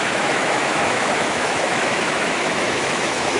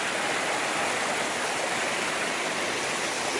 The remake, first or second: first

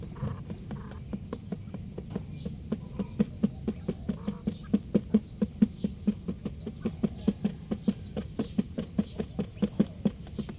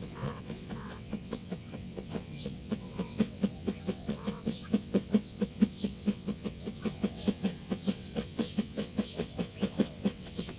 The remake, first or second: second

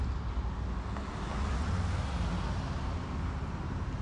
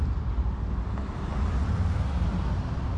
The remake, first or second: second